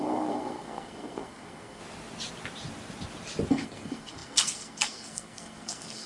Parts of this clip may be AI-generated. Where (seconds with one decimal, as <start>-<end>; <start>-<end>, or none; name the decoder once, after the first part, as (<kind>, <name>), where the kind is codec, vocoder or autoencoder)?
0.0-1.8 (codec, SNAC); 3.5-6.1